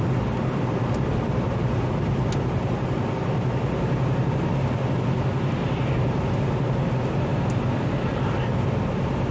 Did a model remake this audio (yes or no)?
no